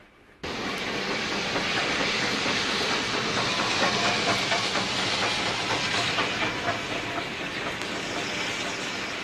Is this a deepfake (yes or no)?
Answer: no